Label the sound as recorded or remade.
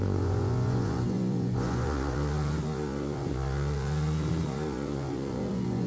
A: remade